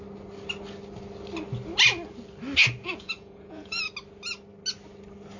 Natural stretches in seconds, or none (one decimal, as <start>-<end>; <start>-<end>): 0.0-2.8; 3.8-5.4